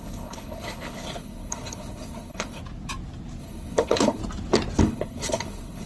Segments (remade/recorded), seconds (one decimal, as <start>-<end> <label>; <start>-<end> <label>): 0.0-2.6 remade; 2.6-3.4 recorded; 3.4-4.2 remade; 4.2-4.8 recorded; 4.8-5.9 remade